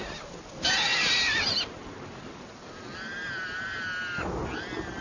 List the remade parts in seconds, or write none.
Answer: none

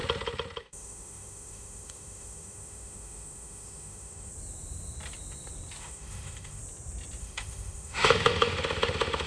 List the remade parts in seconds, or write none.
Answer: 0.6-4.3 (autoencoder, DAC-VAE); 5.8-6.6; 7.2-9.3

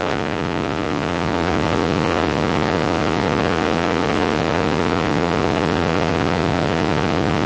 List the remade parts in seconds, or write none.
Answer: 0.0-7.5 (vocoder, Vocos)

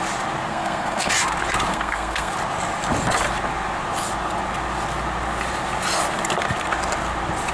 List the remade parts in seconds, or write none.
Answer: 0.5-1.1 (codec, SNAC); 1.7-2.3

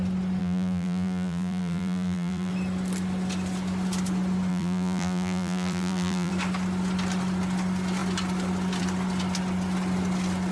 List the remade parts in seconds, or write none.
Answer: 0.4-2.5 (vocoder, BigVGAN v2); 4.5-6.3

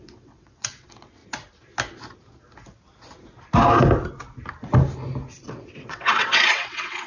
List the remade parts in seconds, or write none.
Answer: 0.0-1.2 (vocoder, WaveNeXt); 5.5-7.1

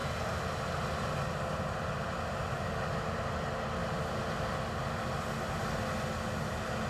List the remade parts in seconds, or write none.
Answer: none